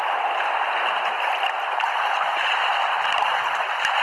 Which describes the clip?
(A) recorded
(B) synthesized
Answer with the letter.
A